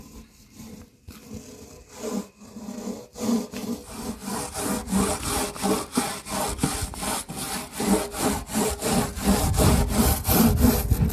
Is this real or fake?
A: real